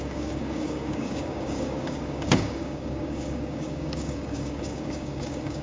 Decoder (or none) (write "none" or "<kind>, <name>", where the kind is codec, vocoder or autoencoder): codec, DAC